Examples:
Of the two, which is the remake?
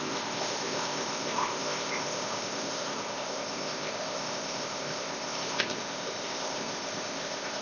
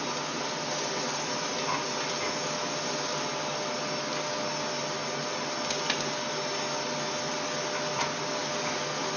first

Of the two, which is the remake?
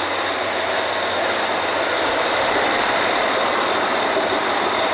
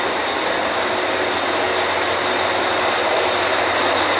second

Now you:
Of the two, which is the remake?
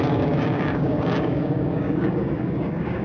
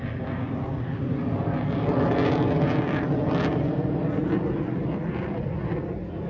first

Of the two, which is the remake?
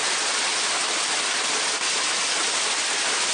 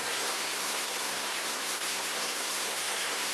second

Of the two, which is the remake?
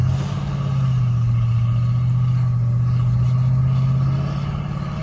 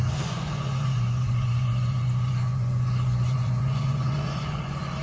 second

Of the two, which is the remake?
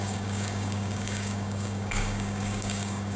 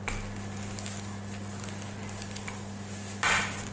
first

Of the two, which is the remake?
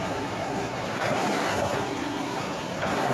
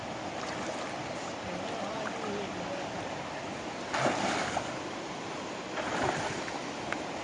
first